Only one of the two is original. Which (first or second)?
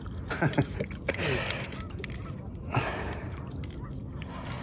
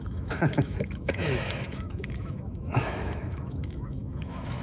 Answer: first